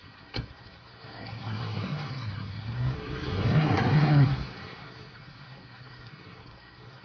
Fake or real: fake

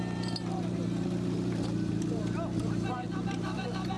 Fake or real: fake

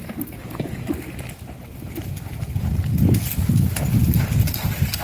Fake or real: real